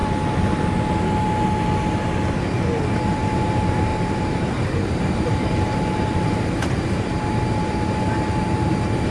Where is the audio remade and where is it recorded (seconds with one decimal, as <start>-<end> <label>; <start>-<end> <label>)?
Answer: 0.0-2.9 recorded; 2.9-9.1 remade